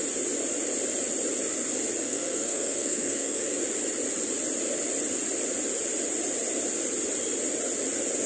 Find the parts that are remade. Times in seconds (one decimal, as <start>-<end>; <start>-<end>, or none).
2.0-3.4